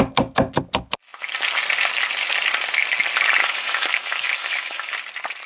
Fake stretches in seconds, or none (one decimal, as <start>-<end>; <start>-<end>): 3.4-4.9